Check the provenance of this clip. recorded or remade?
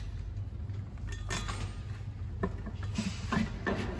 recorded